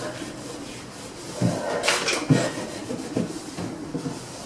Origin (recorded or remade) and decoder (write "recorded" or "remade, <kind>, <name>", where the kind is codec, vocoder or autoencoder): recorded